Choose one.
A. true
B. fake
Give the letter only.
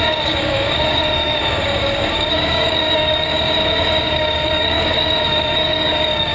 B